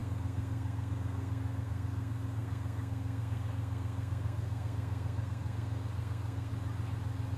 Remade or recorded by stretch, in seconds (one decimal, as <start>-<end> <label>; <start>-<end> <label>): 0.0-6.5 remade; 6.5-7.4 recorded